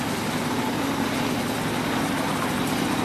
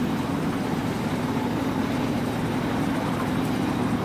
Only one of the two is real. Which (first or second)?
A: first